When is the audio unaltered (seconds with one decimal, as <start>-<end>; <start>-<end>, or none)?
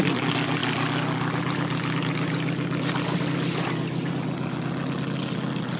0.0-5.8